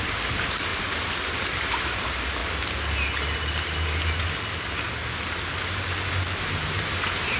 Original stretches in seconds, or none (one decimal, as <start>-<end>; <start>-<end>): 2.4-6.4